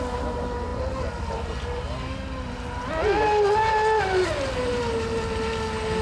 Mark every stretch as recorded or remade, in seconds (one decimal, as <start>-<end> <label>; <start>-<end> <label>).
0.0-6.0 recorded